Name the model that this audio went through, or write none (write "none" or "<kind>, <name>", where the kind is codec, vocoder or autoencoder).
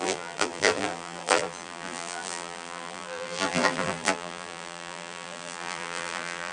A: vocoder, BigVGAN v2